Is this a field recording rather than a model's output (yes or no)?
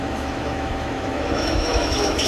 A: no